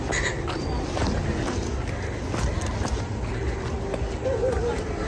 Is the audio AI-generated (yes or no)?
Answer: no